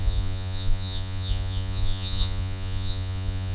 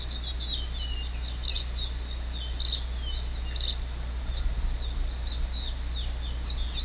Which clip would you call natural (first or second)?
second